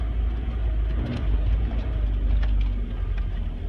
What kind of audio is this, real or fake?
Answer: real